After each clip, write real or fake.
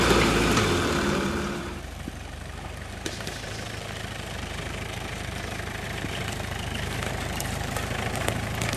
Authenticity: fake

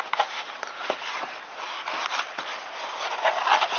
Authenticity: fake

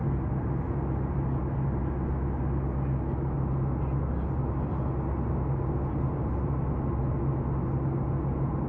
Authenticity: real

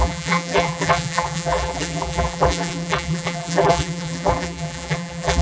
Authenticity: fake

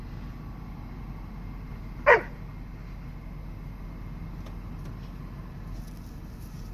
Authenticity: real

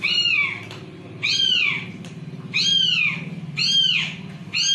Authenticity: real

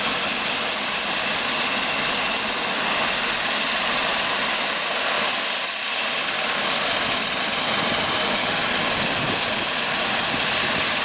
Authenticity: real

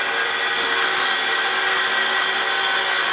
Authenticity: real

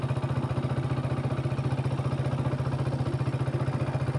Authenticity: real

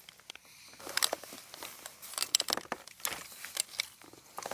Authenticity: real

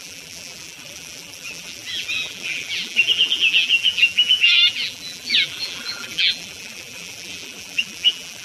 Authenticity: fake